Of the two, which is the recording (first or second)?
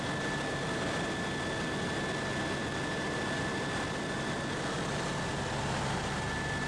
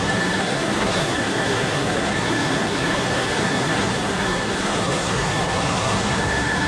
first